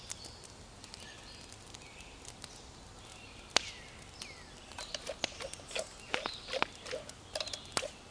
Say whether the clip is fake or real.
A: real